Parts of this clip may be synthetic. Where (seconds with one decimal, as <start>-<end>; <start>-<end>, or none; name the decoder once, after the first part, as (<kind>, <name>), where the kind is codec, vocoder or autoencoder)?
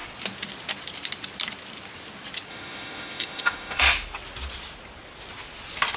2.5-3.8 (autoencoder, DAC-VAE)